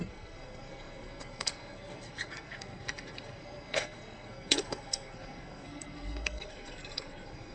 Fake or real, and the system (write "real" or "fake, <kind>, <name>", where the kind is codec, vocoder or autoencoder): fake, codec, SNAC